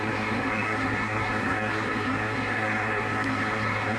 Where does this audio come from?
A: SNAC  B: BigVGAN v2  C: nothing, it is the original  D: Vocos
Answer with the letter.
A